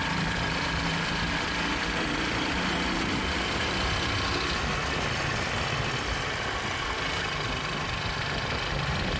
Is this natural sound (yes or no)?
yes